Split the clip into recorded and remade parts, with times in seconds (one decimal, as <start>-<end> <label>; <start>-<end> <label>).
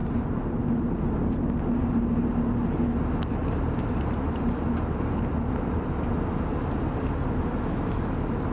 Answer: 0.0-1.4 remade; 1.4-1.8 recorded; 1.8-2.8 remade; 2.8-3.4 recorded; 3.4-5.9 remade; 5.9-8.5 recorded